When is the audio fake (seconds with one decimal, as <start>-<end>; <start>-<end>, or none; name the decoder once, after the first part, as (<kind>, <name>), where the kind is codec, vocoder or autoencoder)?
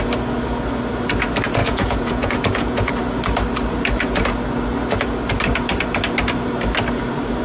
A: 1.6-2.9 (vocoder, Vocos)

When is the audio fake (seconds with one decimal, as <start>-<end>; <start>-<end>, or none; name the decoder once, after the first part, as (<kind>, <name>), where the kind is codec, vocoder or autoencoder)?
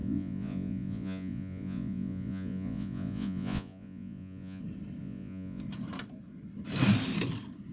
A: 0.0-4.6 (vocoder, Vocos); 5.0-5.6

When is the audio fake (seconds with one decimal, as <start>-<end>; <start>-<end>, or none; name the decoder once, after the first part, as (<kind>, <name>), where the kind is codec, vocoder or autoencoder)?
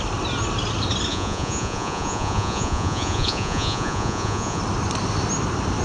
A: 1.1-4.6 (vocoder, Vocos)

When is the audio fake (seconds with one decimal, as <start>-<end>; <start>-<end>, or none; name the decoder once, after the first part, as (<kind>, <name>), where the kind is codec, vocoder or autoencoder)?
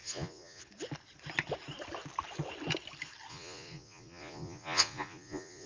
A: 0.0-0.6 (vocoder, Vocos); 3.3-5.7